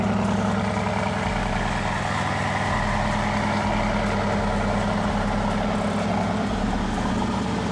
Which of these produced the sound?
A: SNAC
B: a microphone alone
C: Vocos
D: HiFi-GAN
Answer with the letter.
B